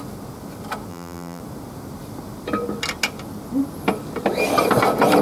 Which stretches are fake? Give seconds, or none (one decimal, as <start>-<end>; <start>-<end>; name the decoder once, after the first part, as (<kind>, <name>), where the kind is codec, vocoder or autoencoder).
0.9-1.4 (vocoder, BigVGAN v2)